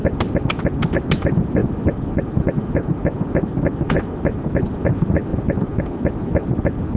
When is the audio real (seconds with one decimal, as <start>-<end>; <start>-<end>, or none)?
0.0-7.0